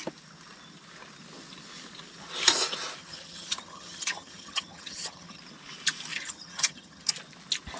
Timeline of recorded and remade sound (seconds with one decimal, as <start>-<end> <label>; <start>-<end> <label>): 0.0-3.0 recorded; 3.0-5.4 remade; 5.4-6.1 recorded; 6.1-7.1 remade; 7.1-7.8 recorded